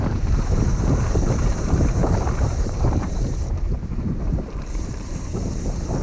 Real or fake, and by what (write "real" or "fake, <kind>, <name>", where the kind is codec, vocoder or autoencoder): fake, vocoder, BigVGAN v2